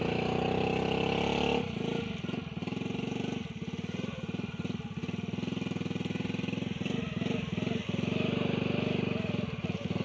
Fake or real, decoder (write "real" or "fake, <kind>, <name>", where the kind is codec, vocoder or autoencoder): real